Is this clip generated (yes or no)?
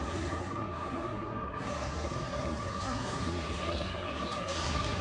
yes